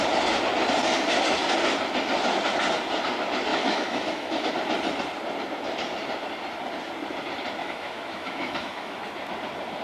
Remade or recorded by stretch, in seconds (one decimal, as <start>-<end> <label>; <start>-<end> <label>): 0.0-3.5 recorded; 3.5-4.5 remade; 4.5-7.6 recorded; 7.6-9.0 remade; 9.0-9.8 recorded